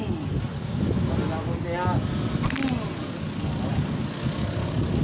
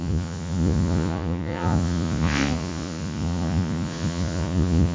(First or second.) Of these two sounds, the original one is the first